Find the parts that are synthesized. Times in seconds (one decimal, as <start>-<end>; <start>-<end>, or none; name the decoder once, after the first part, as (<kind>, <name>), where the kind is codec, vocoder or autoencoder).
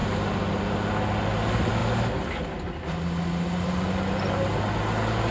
none